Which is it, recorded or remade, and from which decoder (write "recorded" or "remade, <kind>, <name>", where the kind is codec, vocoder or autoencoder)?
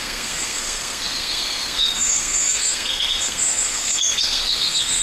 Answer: remade, codec, SNAC